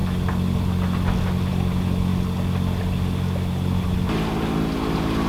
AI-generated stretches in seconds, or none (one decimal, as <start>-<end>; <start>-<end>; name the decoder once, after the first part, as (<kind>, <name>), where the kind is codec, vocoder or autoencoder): none